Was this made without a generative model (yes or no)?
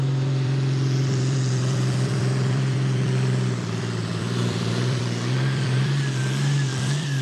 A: no